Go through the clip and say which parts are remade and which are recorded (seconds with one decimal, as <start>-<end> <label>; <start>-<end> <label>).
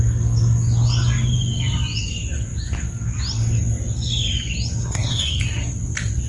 0.0-4.8 recorded; 4.8-5.4 remade; 5.4-6.3 recorded